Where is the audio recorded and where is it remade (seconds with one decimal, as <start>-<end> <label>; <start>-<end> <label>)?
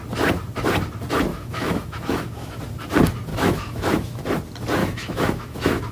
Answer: 0.0-1.3 recorded; 1.3-2.6 remade; 2.6-3.3 recorded; 3.3-4.2 remade; 4.2-4.8 recorded; 4.8-5.9 remade